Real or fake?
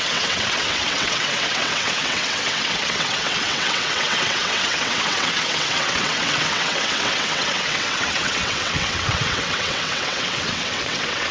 fake